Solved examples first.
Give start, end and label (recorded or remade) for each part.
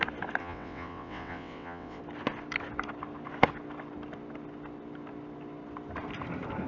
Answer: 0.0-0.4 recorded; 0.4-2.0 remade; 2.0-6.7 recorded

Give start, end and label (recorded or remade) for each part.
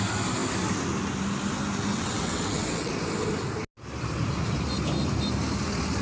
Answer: 0.0-1.9 recorded; 1.9-2.9 remade; 2.9-6.0 recorded